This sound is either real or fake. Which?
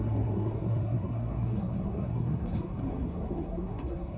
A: fake